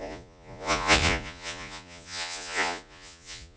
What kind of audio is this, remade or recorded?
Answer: remade